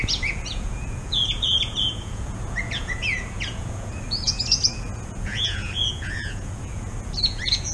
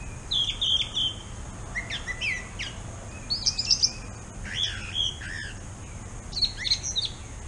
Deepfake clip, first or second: first